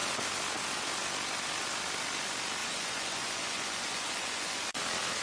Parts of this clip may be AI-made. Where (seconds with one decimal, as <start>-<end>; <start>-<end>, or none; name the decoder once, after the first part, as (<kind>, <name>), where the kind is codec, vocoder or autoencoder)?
2.6-4.8 (vocoder, Vocos)